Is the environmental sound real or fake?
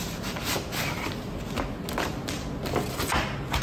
real